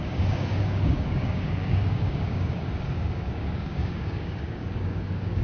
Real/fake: fake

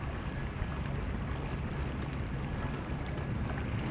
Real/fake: real